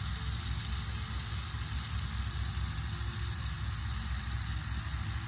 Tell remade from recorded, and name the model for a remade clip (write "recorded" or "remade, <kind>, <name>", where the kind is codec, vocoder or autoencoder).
recorded